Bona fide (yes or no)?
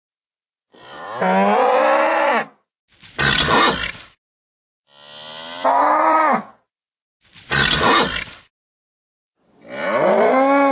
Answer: yes